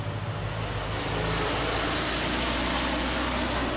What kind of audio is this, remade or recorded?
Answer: recorded